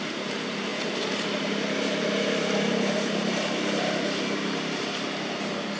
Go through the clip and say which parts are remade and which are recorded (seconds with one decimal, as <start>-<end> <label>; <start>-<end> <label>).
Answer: 0.0-5.8 recorded